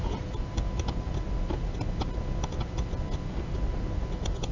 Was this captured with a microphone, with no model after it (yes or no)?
yes